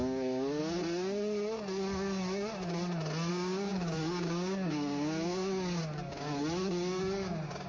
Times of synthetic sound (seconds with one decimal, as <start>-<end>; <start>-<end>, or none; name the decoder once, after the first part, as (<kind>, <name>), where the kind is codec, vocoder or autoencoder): 0.0-0.6 (codec, DAC); 3.3-7.7